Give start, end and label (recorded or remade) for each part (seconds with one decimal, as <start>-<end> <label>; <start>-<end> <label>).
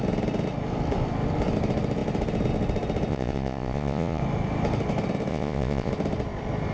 0.0-3.1 recorded; 3.1-4.2 remade; 4.2-5.3 recorded; 5.3-5.9 remade; 5.9-6.7 recorded